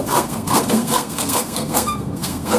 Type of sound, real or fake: fake